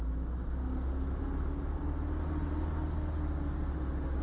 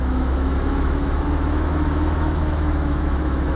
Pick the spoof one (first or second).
second